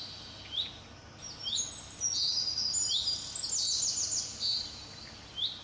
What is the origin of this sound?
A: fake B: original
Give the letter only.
B